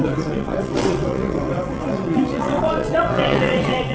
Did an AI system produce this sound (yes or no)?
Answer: yes